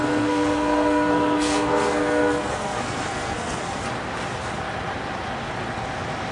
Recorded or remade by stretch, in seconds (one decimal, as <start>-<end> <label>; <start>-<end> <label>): 0.0-3.8 remade; 3.8-6.3 recorded